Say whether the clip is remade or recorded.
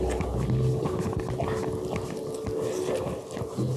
recorded